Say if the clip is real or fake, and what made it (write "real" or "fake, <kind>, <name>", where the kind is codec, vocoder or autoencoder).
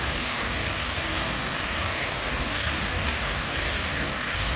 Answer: fake, codec, DAC